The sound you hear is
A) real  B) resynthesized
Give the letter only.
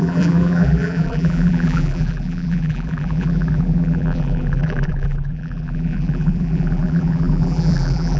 B